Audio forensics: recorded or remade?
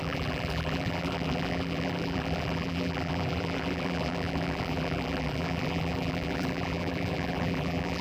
remade